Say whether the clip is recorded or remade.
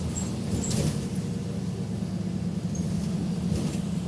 recorded